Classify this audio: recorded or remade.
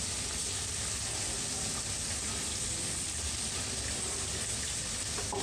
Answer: recorded